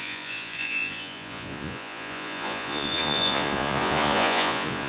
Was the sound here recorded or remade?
remade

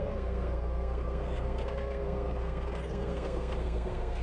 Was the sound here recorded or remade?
remade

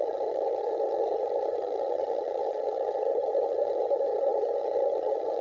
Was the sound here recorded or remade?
remade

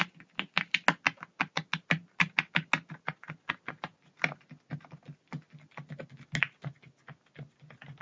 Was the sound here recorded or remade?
recorded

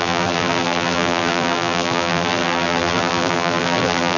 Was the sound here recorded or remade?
remade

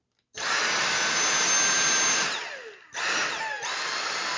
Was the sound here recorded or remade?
recorded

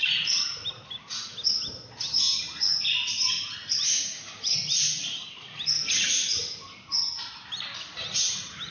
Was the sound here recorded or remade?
recorded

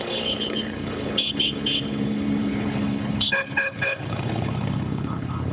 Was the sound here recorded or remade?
remade